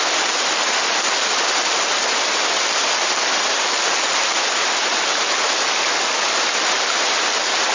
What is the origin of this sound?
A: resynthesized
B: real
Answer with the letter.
B